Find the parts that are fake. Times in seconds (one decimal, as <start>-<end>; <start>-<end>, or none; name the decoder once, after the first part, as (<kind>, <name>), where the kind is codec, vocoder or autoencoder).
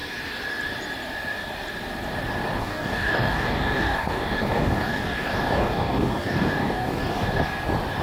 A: 2.6-7.4 (codec, DAC)